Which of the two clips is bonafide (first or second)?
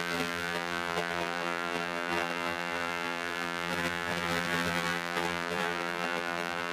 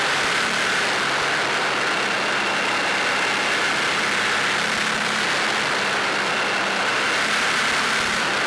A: second